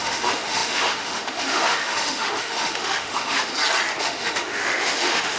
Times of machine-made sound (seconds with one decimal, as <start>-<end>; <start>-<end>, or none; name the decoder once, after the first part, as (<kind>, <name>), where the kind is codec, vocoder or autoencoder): 0.0-3.5 (autoencoder, DAC-VAE); 4.0-5.4

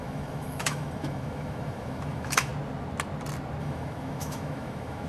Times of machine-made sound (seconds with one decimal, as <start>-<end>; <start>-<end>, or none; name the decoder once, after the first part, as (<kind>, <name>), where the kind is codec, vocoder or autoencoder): 0.0-2.5 (autoencoder, DAC-VAE); 3.6-5.1

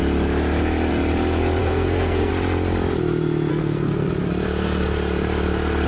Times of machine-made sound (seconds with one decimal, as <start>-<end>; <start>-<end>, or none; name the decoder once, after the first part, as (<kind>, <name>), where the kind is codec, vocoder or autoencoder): 1.6-2.3 (codec, SNAC); 3.5-4.1